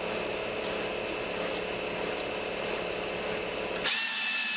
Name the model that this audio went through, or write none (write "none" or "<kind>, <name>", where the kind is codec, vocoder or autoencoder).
none